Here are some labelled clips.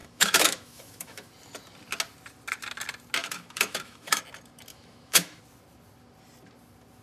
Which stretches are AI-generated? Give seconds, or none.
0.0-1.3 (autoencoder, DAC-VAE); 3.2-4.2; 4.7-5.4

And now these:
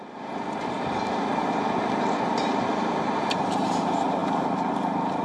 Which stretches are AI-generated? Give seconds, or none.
0.0-1.4 (vocoder, BigVGAN v2); 2.2-5.2